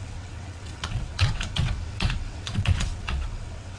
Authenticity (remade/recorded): remade